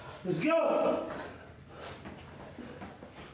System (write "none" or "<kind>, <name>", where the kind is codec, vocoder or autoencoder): none